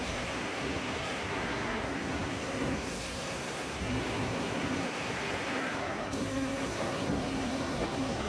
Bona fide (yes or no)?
no